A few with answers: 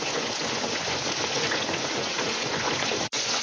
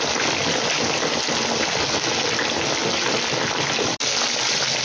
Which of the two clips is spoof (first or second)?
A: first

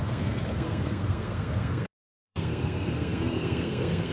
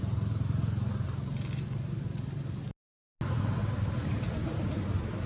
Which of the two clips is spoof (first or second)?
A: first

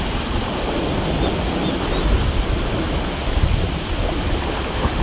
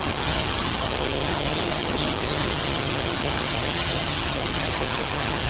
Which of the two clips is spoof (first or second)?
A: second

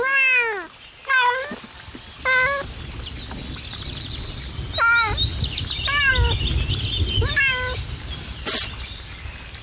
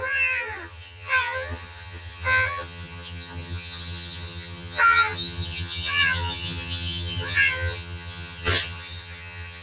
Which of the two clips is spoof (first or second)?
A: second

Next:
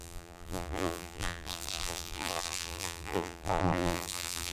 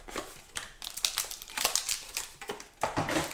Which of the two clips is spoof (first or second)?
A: first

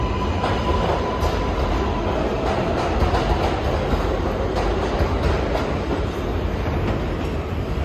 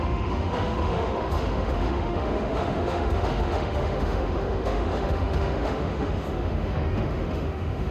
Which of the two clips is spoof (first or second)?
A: second